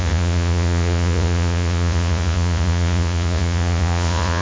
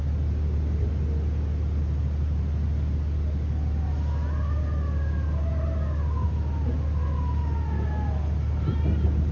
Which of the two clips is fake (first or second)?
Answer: first